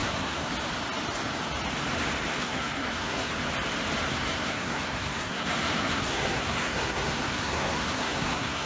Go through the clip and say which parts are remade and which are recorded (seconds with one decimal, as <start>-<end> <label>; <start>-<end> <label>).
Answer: 0.0-0.5 remade; 0.5-2.4 recorded; 2.4-3.3 remade; 3.3-4.1 recorded; 4.1-8.7 remade